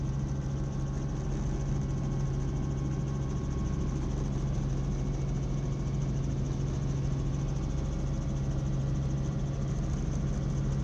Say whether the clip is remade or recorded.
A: recorded